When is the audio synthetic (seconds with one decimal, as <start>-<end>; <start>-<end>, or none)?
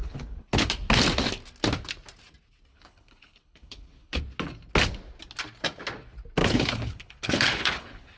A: 0.0-0.7; 2.7-4.2; 6.4-8.2